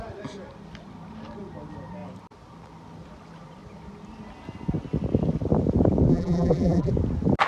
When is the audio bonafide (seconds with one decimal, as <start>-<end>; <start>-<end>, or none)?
0.0-6.1; 6.9-7.5